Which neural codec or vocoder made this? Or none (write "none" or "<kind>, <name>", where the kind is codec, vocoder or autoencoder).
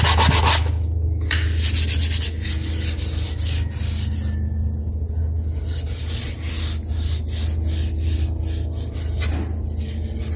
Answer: none